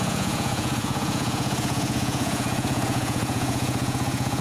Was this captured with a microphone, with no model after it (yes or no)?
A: no